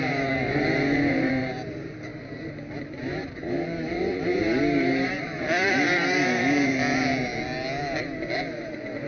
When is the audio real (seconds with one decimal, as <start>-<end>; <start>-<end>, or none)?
7.3-9.1